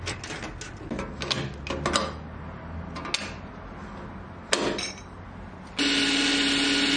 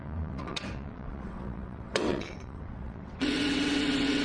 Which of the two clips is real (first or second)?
first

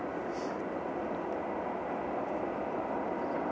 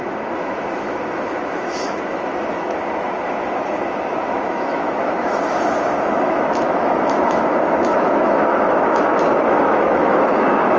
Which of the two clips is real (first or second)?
first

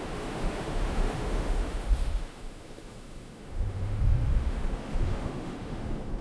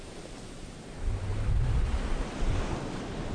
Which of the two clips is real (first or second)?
second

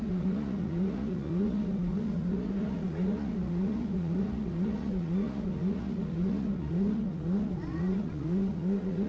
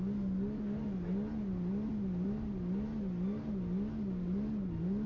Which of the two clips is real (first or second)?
second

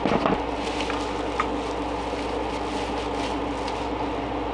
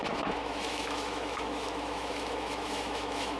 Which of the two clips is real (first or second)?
first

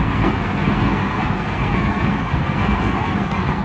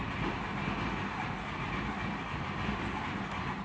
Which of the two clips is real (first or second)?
second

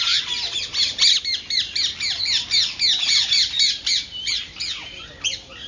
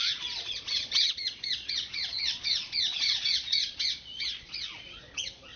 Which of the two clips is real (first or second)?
first